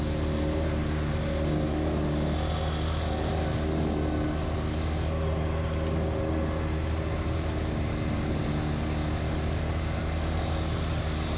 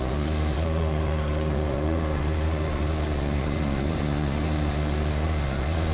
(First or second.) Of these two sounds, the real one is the first